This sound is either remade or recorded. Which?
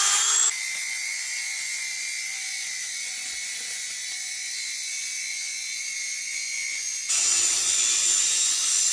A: remade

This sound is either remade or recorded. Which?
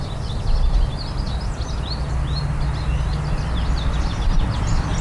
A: recorded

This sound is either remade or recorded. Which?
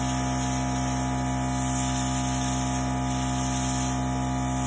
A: recorded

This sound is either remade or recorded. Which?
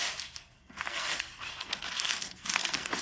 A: remade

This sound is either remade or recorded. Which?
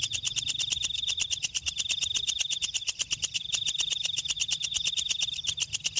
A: recorded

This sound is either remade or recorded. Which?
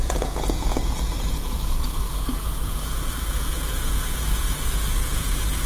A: remade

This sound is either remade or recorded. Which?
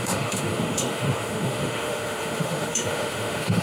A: remade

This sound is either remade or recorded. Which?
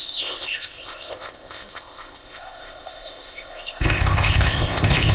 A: remade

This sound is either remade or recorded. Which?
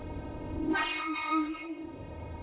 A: remade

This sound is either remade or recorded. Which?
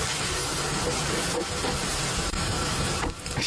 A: recorded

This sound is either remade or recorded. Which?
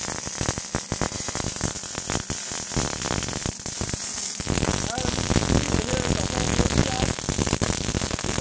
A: recorded